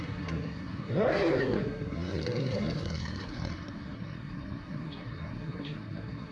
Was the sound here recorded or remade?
remade